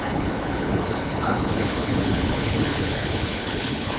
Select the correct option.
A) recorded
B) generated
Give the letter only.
B